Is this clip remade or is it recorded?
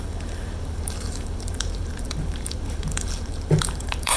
remade